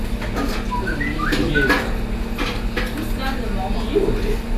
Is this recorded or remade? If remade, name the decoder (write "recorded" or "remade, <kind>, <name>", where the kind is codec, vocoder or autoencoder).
recorded